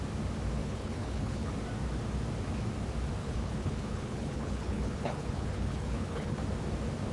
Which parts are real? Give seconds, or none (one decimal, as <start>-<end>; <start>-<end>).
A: 0.0-0.6; 1.5-3.2; 6.4-7.1